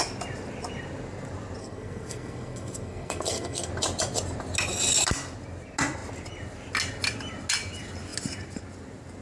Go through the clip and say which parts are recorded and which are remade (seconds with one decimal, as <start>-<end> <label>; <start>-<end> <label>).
0.0-1.6 recorded; 1.6-3.7 remade; 3.7-9.2 recorded